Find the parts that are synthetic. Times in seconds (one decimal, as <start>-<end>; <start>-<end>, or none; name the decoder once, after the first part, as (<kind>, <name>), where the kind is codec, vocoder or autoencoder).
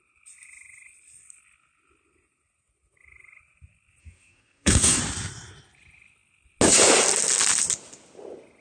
4.0-5.0 (codec, DAC)